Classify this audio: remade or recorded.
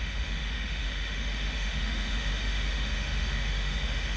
remade